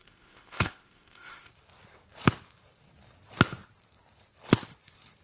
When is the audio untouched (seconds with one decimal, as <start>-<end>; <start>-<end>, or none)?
1.5-5.2